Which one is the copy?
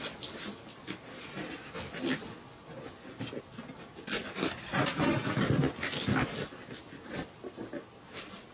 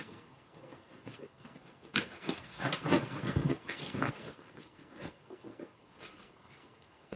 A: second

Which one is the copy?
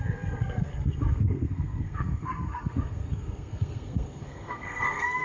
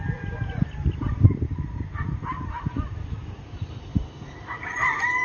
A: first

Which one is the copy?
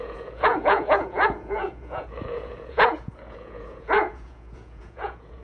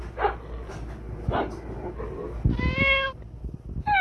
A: first